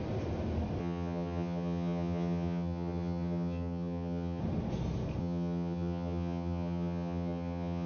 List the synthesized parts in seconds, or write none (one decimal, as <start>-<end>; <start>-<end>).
0.8-4.4; 5.2-7.9